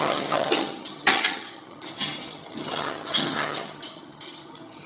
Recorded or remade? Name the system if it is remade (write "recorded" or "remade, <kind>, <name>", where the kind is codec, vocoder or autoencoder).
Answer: remade, vocoder, HiFi-GAN